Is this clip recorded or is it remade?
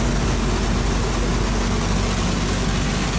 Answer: recorded